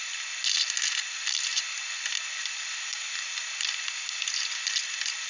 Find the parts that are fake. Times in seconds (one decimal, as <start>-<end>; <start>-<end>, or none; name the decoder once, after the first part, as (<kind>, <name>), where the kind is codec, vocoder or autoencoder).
none